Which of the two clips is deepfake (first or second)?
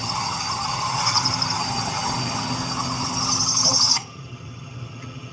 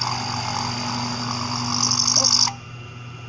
first